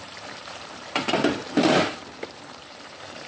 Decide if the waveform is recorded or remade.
remade